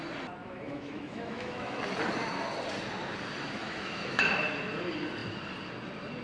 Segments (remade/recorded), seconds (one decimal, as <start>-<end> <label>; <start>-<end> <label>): 0.0-0.4 recorded; 0.4-1.8 remade; 1.8-3.6 recorded; 3.6-4.2 remade; 4.2-6.2 recorded